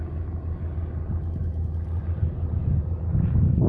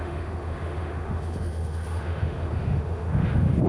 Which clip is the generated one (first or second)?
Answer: second